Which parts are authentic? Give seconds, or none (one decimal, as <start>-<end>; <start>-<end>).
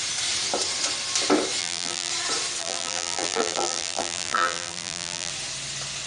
0.0-1.6; 2.1-2.6; 5.3-6.1